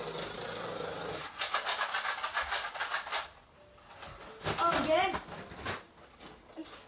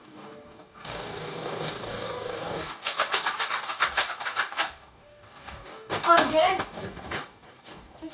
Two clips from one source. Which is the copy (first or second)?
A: second